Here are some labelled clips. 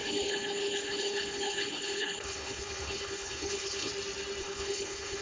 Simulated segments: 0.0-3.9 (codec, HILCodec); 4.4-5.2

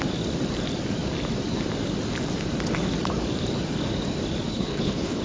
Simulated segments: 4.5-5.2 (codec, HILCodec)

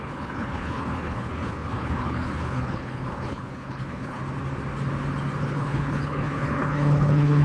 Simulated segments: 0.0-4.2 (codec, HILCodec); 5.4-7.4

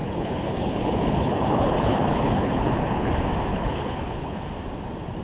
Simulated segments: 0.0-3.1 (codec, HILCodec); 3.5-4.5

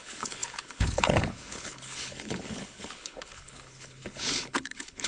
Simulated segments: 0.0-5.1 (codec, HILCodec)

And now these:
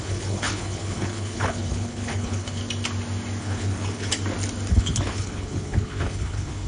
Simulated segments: 0.0-2.6 (codec, HILCodec); 3.4-4.1; 4.7-6.7